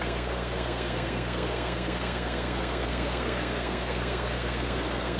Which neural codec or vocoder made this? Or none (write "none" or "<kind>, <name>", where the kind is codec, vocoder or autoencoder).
codec, SNAC